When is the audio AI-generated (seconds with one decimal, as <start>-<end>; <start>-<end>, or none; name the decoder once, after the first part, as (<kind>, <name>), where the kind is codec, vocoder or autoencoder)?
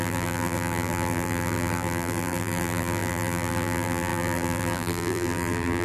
0.0-5.8 (vocoder, BigVGAN v2)